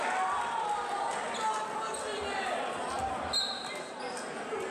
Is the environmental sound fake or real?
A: real